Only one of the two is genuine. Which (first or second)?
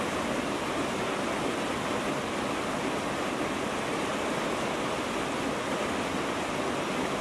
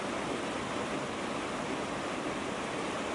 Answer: first